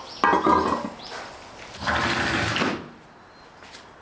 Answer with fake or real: real